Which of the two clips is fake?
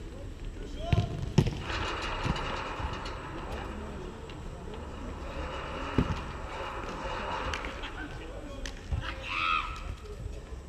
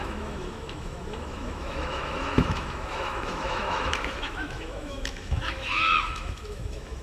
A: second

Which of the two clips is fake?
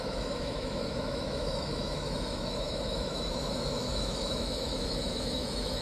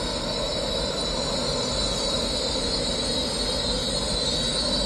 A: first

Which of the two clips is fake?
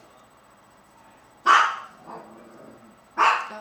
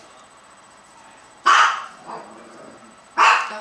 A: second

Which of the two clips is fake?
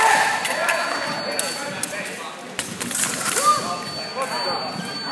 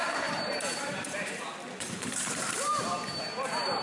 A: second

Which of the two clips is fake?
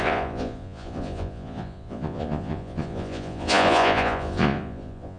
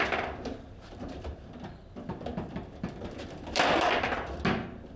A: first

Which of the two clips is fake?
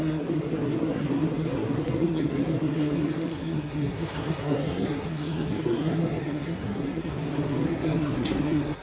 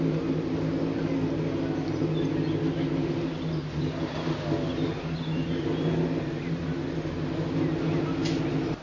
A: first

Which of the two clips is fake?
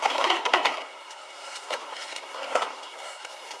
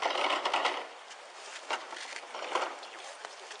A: first